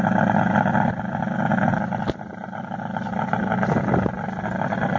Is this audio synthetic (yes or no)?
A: no